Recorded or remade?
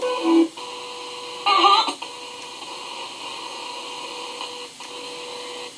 recorded